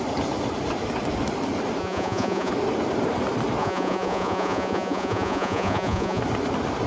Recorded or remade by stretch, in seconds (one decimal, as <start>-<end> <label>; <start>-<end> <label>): 0.0-1.8 recorded; 1.8-2.5 remade; 2.5-3.6 recorded; 3.6-6.2 remade; 6.2-6.9 recorded